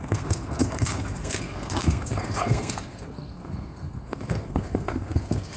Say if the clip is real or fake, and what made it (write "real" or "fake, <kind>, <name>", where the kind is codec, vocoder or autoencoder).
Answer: fake, codec, SNAC